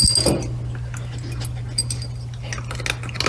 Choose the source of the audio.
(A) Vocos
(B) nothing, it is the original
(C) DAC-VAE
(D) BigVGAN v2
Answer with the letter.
B